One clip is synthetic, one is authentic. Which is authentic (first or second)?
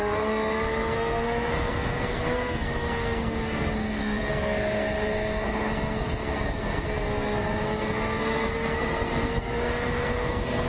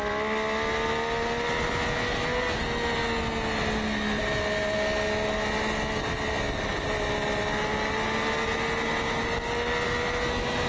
second